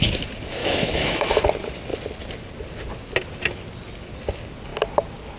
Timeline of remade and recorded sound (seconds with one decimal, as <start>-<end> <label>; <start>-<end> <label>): 0.0-0.6 recorded; 0.6-1.4 remade; 1.4-5.4 recorded